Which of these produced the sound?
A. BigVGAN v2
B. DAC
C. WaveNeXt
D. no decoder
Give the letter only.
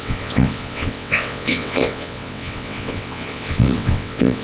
C